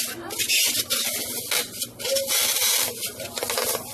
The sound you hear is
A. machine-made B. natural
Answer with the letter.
B